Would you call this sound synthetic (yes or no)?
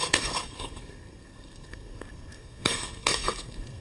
yes